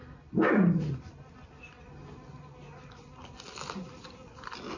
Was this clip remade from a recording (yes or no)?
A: no